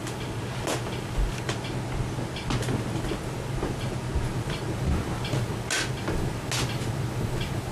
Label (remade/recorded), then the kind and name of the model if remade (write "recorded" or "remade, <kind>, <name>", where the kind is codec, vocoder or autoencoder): recorded